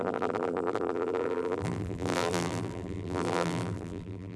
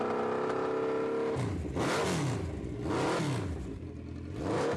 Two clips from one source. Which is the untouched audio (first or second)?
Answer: second